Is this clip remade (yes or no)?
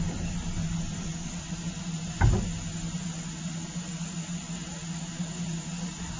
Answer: no